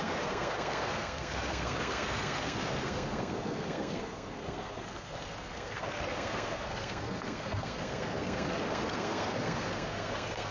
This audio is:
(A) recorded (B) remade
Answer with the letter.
B